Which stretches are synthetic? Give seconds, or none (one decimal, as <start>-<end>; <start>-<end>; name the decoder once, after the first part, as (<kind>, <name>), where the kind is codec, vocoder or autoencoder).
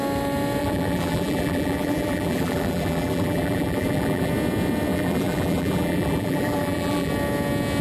0.6-4.3 (vocoder, BigVGAN v2); 4.9-7.1